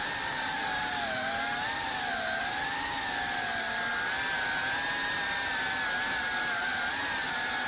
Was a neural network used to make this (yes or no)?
no